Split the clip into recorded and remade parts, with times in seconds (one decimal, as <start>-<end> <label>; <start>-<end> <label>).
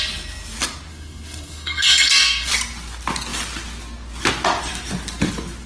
0.0-0.9 recorded; 0.9-2.5 remade; 2.5-5.7 recorded